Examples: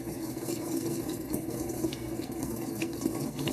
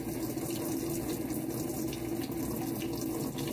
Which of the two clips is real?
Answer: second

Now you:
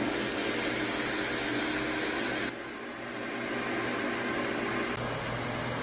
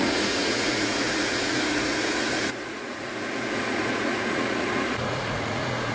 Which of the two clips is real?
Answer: first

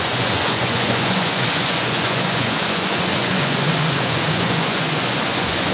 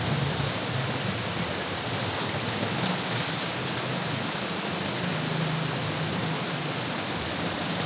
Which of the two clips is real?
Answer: second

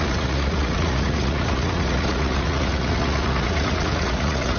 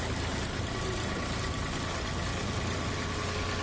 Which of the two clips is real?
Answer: second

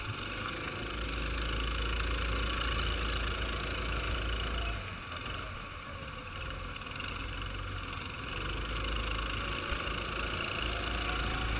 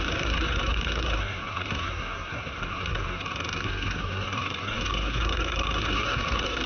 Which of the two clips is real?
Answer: first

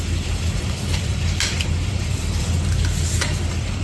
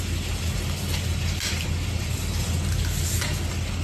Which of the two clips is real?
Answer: second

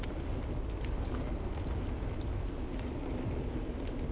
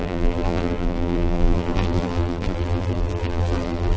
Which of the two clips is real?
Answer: first